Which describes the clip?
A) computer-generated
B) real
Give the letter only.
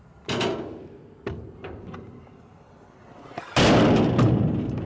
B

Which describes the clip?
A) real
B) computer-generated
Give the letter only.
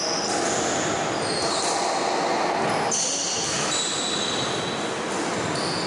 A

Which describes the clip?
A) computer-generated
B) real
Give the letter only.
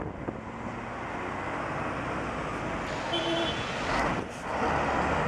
B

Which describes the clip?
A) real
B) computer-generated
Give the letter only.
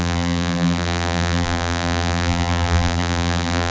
B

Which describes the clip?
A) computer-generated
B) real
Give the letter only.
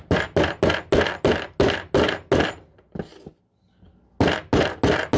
B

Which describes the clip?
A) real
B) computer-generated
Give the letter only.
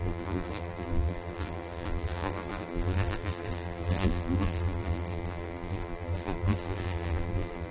B